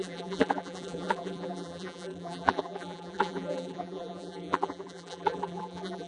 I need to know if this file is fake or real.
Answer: fake